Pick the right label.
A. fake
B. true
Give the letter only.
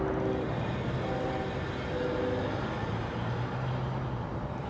B